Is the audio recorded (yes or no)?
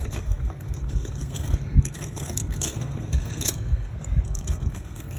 no